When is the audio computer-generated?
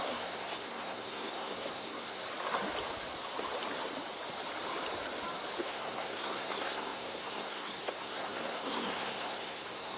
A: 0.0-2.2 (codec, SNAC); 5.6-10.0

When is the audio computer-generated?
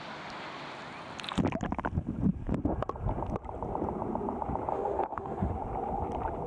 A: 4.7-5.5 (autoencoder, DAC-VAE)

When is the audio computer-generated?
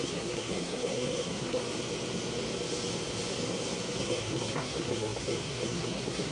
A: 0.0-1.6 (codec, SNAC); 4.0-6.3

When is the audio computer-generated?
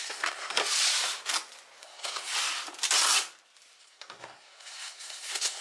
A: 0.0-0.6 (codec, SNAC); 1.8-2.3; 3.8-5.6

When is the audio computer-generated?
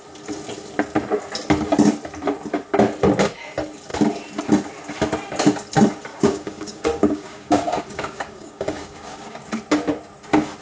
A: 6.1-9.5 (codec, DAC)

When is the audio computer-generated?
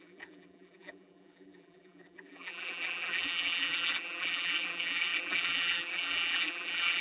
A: 0.0-7.0 (vocoder, BigVGAN v2)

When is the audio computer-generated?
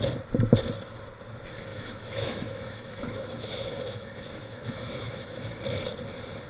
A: 1.7-5.6 (autoencoder, DAC-VAE)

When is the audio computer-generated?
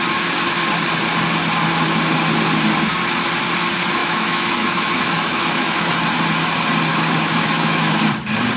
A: 4.0-5.9 (autoencoder, DAC-VAE); 6.9-8.0